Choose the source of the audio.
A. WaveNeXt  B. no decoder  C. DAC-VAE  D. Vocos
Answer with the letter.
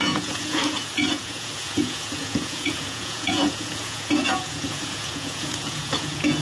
D